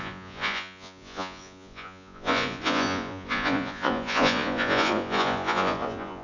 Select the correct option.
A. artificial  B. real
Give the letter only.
A